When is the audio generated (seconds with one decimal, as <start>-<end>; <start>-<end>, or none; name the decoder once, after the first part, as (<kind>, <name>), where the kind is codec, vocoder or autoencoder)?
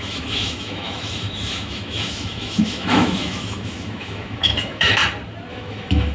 0.0-5.0 (autoencoder, DAC-VAE); 5.5-6.1